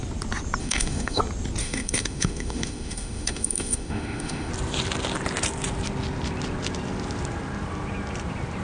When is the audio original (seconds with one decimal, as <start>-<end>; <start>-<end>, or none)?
0.0-0.6; 1.2-1.6; 4.5-8.6